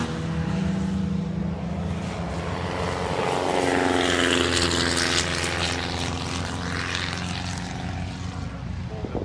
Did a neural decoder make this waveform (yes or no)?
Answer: no